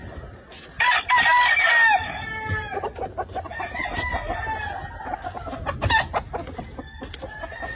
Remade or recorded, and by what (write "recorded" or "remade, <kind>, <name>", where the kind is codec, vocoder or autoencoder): recorded